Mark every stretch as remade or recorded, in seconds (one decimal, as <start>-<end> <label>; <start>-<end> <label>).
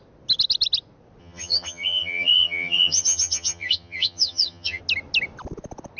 0.0-1.2 recorded; 1.2-4.8 remade; 4.8-6.0 recorded